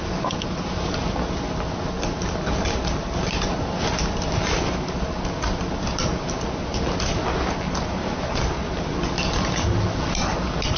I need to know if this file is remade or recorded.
recorded